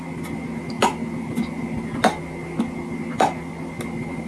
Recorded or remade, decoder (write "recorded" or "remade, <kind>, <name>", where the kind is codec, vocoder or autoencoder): recorded